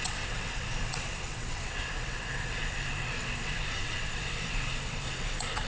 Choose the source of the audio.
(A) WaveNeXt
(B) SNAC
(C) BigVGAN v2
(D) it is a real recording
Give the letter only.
A